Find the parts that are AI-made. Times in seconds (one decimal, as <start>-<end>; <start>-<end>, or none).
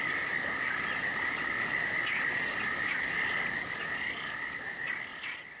none